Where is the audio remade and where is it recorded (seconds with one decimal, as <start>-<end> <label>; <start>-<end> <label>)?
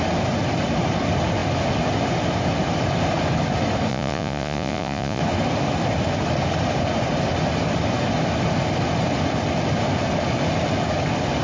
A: 0.0-3.9 recorded; 3.9-5.2 remade; 5.2-11.4 recorded